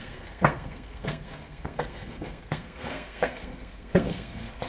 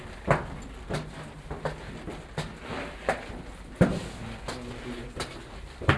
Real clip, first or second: second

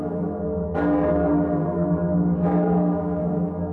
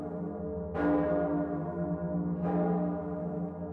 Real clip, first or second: second